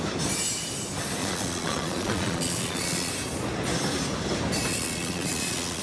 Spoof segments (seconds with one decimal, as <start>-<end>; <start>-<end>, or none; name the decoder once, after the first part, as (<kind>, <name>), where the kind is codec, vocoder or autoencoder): 1.2-3.1 (vocoder, Vocos); 4.7-5.8